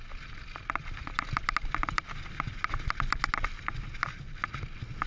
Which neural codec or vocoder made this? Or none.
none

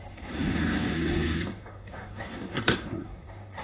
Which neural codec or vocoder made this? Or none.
codec, SNAC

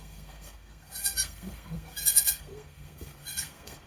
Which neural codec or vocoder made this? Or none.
codec, SNAC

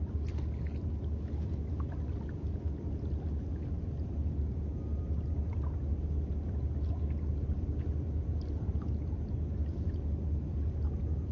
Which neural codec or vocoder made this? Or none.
none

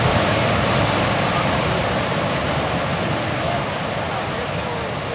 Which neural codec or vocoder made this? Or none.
none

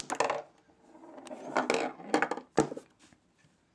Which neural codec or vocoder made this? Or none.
none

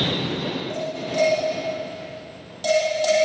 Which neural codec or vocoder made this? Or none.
none